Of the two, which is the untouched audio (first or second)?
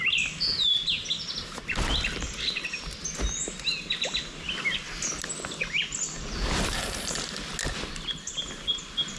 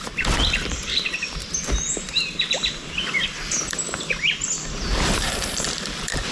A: first